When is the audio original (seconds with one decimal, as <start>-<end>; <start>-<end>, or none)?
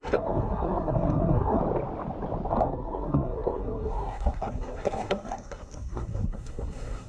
1.6-2.5